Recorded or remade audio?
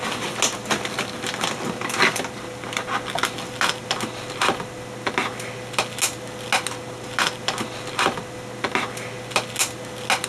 recorded